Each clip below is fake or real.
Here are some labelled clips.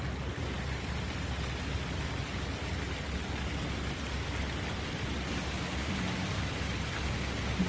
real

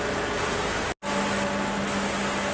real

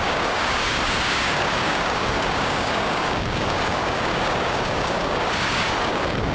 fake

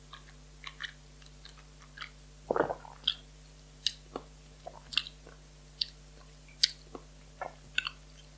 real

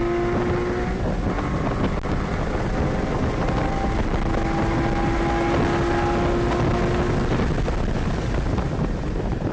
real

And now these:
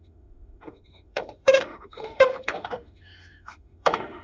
fake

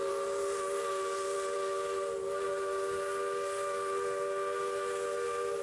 real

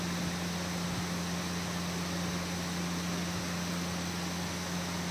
real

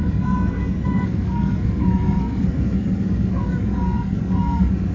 fake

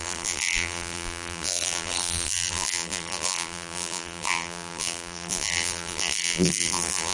fake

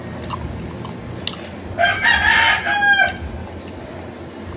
real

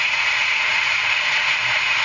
fake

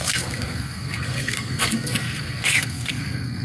fake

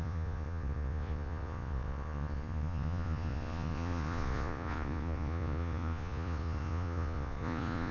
fake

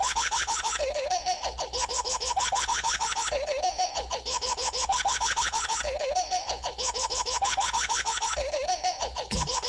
fake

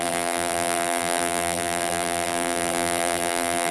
fake